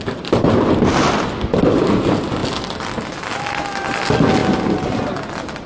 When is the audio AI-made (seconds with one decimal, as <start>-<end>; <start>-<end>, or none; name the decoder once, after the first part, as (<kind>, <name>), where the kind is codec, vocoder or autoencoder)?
none